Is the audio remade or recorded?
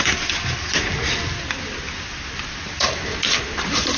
recorded